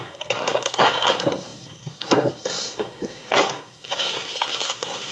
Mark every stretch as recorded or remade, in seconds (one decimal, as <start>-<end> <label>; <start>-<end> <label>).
0.0-5.1 remade